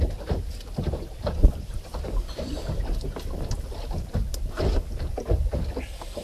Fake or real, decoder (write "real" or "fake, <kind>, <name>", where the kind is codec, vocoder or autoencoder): fake, vocoder, BigVGAN v2